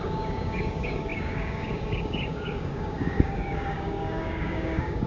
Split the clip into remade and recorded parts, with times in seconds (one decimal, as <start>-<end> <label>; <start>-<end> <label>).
0.0-5.1 remade